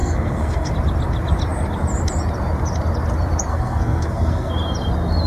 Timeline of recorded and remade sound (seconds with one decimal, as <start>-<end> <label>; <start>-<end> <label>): 0.0-0.7 remade; 0.7-3.5 recorded; 3.5-4.5 remade; 4.5-5.3 recorded